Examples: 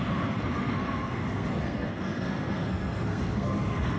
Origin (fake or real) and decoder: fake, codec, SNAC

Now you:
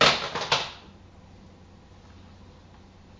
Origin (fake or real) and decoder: real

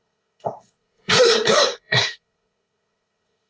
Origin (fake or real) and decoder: fake, codec, SNAC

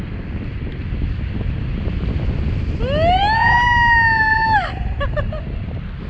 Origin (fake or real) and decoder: real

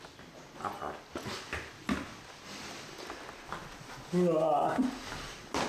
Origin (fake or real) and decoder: real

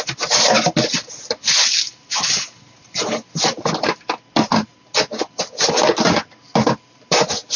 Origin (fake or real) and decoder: real